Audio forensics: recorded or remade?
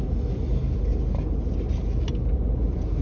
recorded